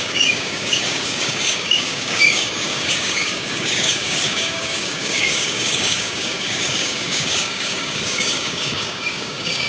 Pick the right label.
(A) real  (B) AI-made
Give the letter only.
B